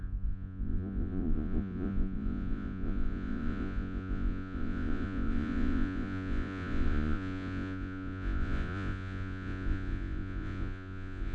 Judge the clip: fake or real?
fake